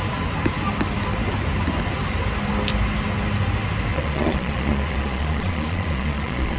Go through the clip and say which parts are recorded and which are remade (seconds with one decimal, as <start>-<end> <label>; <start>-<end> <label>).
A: 0.0-3.9 recorded; 3.9-6.6 remade